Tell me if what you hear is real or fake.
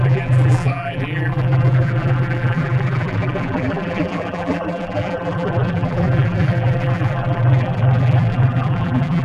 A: fake